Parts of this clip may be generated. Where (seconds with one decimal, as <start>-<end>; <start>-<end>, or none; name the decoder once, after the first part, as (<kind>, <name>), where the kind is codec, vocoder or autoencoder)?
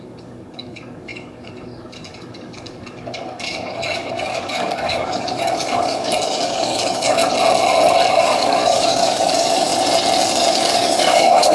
0.0-7.2 (codec, DAC); 8.1-9.7; 10.5-11.5